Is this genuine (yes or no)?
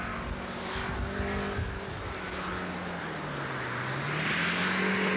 yes